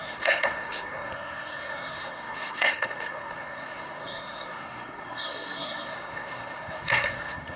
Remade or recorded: remade